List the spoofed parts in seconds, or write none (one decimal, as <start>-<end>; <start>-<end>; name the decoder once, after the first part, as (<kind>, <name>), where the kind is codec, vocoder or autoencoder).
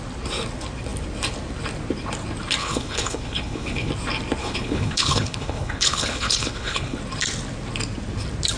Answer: 2.6-3.9 (codec, HILCodec); 4.4-7.0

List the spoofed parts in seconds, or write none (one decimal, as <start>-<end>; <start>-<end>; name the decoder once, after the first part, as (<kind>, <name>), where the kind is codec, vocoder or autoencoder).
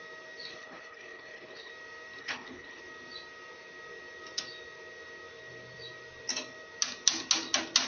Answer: 0.5-1.7 (codec, HILCodec); 2.2-2.8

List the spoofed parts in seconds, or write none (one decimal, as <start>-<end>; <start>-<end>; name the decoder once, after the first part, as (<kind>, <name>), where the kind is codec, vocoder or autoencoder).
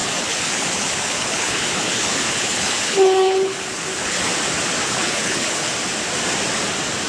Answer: 0.0-4.3 (codec, HILCodec); 4.8-5.7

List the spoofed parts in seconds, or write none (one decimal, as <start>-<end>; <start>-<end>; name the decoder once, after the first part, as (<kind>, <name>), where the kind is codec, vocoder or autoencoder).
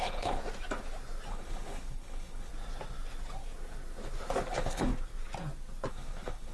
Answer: 0.0-0.4 (codec, HILCodec); 1.3-2.5; 4.5-4.9; 5.9-6.5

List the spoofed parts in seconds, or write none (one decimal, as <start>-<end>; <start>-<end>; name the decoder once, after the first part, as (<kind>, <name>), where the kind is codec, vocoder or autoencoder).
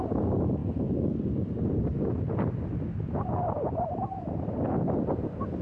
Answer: none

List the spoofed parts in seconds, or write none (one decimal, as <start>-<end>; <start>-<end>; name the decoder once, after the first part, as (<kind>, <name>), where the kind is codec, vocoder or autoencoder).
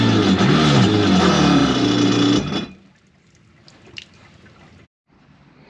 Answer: none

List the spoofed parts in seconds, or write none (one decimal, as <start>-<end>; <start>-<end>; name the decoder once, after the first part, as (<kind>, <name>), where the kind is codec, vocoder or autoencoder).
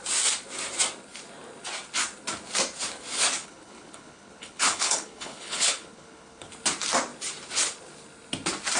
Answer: 3.4-6.5 (codec, HILCodec)